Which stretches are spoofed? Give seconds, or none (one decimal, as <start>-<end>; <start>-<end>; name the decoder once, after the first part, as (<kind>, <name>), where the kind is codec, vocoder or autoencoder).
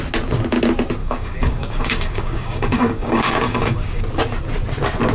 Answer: 1.0-4.0 (codec, DAC)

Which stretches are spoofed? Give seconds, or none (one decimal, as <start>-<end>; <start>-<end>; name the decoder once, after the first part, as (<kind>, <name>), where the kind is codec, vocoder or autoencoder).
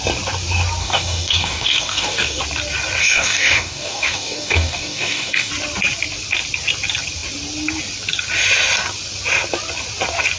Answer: 0.8-2.4 (codec, DAC); 3.0-5.5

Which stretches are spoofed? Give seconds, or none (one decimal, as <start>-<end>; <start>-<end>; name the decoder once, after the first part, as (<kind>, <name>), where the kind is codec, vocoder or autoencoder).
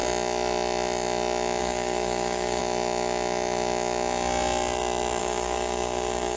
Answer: 1.6-2.6 (codec, DAC); 5.2-6.4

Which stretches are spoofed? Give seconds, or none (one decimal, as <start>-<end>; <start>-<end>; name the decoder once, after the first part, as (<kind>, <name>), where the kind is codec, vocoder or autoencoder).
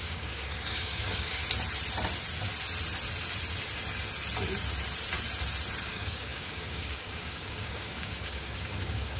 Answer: 0.0-1.4 (codec, DAC); 5.8-9.2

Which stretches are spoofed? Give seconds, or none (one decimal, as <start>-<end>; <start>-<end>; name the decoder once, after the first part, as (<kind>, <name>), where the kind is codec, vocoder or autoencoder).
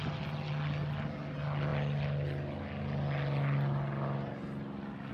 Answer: none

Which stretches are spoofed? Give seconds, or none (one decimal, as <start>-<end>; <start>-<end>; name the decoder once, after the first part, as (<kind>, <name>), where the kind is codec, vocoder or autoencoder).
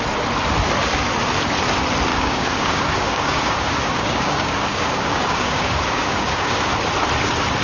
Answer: 2.1-6.7 (codec, DAC)